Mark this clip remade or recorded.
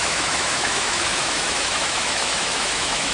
remade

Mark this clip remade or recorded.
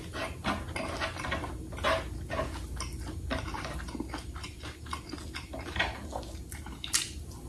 recorded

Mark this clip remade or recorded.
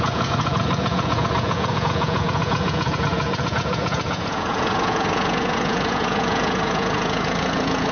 remade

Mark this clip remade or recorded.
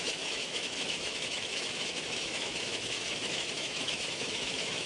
remade